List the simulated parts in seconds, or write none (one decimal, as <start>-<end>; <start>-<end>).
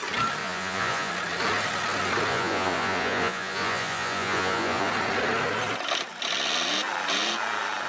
0.4-1.1; 2.3-4.9